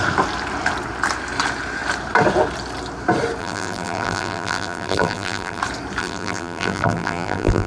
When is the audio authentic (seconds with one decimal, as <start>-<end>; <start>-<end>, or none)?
0.0-3.4; 5.6-6.0